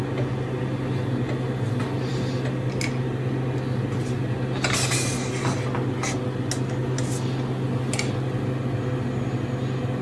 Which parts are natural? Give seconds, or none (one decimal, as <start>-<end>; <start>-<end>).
0.0-10.0